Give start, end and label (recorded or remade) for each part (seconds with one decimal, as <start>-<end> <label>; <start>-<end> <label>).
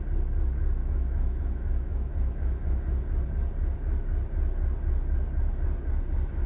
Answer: 0.0-0.8 recorded; 0.8-2.8 remade; 2.8-6.5 recorded